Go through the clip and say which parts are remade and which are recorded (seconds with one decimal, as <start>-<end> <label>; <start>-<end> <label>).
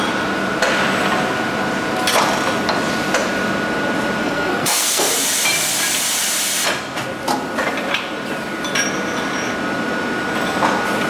0.0-4.2 recorded; 4.2-5.1 remade; 5.1-11.1 recorded